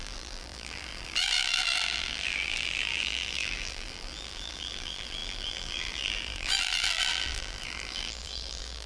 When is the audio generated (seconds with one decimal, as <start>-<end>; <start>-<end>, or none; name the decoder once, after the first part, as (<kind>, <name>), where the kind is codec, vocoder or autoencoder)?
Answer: 0.0-8.9 (vocoder, BigVGAN v2)